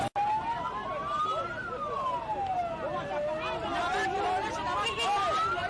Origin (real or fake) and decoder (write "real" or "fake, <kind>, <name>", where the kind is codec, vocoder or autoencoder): real